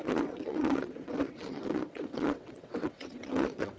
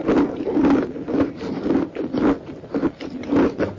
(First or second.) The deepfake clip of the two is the first